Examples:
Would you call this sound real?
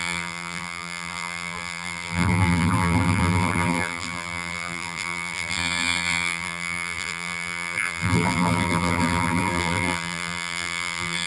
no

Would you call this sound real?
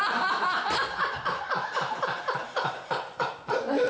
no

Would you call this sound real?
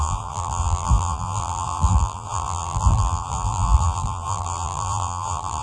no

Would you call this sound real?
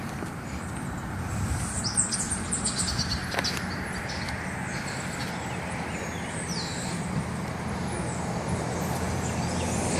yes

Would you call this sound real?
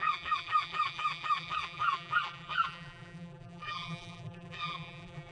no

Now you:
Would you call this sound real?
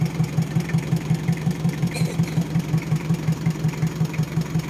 no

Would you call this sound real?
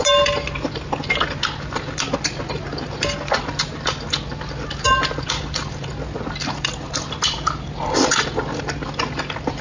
yes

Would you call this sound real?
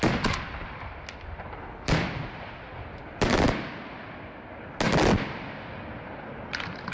yes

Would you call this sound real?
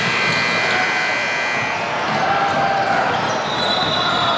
yes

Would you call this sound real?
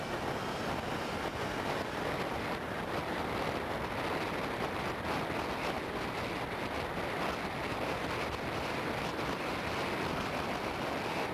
yes